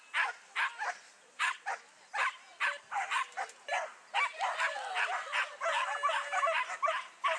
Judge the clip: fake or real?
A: real